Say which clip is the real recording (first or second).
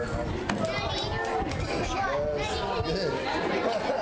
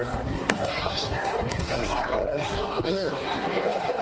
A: first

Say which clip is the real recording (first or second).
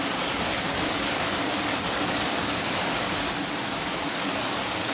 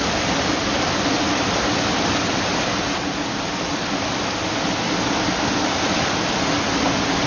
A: second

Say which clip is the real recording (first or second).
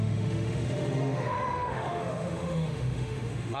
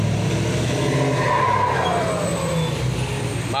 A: second